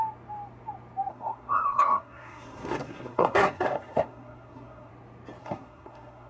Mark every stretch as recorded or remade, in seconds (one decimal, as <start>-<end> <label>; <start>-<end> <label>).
0.0-1.1 recorded; 1.1-4.9 remade; 4.9-5.4 recorded; 5.4-6.3 remade